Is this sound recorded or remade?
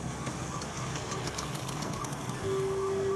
remade